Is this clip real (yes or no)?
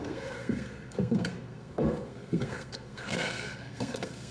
no